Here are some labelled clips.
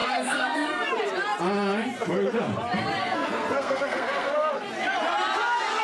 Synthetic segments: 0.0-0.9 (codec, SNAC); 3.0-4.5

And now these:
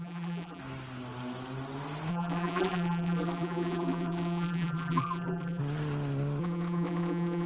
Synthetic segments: 0.0-0.6 (vocoder, BigVGAN v2); 2.1-5.6; 6.4-7.5

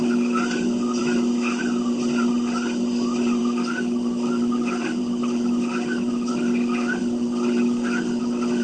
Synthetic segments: 1.0-1.6 (autoencoder, DAC-VAE)

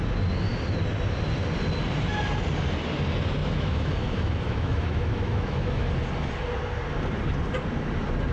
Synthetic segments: 3.4-5.9 (autoencoder, DAC-VAE)

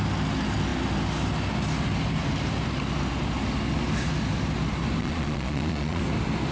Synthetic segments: 5.0-6.0 (vocoder, Vocos)